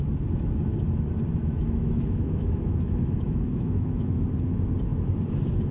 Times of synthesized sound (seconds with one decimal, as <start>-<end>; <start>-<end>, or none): 1.3-4.2